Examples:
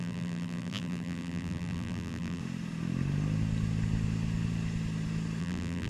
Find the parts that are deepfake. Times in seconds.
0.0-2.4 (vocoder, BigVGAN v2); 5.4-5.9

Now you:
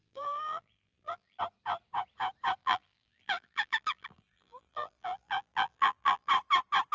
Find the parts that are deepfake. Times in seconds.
0.0-1.4 (vocoder, BigVGAN v2); 2.6-6.3

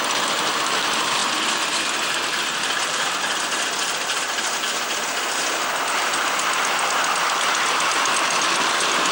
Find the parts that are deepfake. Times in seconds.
1.2-4.5 (vocoder, BigVGAN v2)

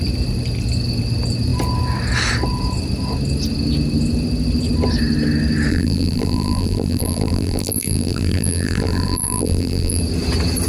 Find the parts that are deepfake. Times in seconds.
5.7-10.0 (vocoder, BigVGAN v2)

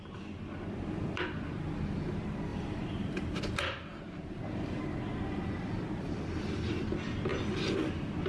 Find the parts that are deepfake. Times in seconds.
2.5-3.4 (vocoder, BigVGAN v2)

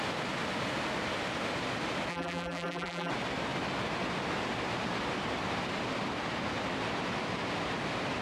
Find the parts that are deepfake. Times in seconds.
2.1-3.1 (vocoder, BigVGAN v2)

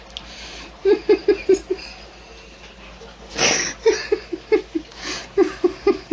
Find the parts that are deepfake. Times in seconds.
none

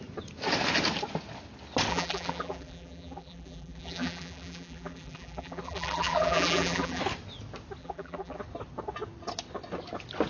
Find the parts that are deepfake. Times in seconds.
1.9-7.0 (vocoder, BigVGAN v2); 7.8-8.4